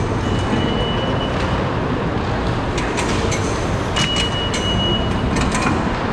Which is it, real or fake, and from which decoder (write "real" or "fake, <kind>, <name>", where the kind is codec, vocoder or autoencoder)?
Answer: real